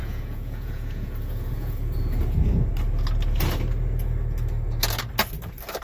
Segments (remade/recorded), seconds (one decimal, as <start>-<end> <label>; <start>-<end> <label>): 0.0-2.0 remade; 2.0-5.8 recorded